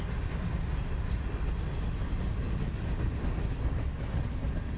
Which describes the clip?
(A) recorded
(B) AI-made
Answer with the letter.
A